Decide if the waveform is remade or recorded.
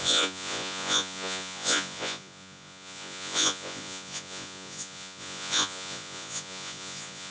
remade